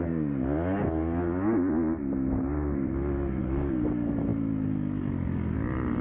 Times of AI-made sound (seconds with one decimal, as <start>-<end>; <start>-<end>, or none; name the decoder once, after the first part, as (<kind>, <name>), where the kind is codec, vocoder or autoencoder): 3.4-3.9 (codec, DAC)